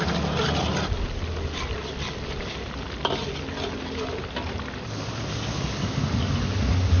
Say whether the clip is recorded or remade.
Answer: recorded